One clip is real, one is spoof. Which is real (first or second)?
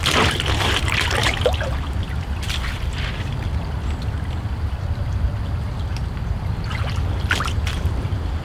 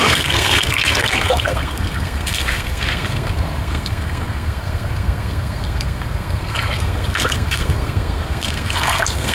first